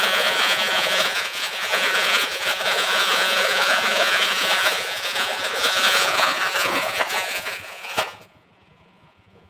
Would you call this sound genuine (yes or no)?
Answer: no